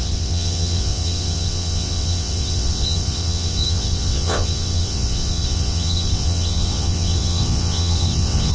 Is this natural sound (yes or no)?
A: no